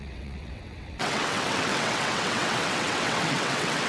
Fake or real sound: fake